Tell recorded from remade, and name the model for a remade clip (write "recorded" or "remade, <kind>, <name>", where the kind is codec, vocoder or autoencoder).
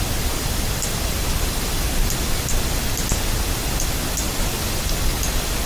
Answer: recorded